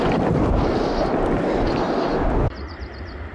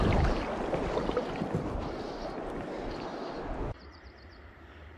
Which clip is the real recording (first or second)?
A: first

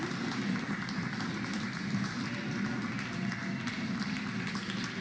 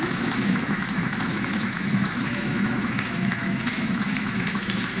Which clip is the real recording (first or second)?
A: first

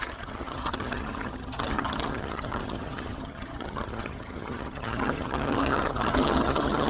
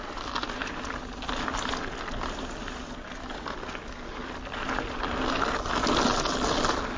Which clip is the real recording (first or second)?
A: second